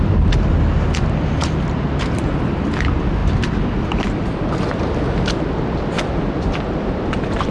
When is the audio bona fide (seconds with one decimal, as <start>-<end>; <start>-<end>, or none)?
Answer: 0.0-7.5